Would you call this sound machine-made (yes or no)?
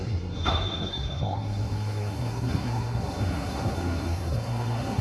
yes